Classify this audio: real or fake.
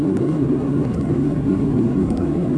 fake